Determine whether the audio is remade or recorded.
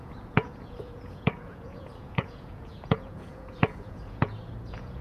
remade